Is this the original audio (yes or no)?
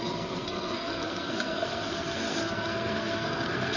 no